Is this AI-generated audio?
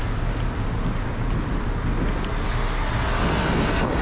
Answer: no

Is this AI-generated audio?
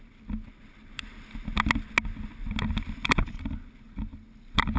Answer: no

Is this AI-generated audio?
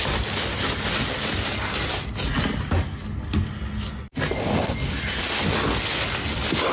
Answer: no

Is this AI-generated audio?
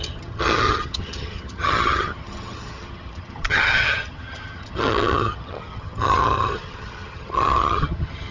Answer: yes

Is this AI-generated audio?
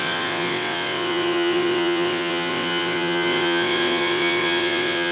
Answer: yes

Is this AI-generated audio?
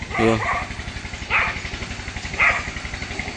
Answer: no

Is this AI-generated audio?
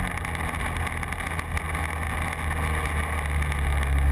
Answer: no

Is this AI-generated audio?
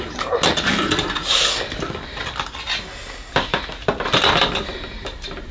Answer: no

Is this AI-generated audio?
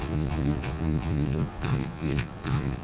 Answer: yes